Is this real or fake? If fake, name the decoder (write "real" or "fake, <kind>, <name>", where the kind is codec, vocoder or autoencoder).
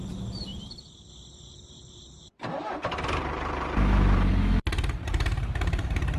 fake, vocoder, BigVGAN v2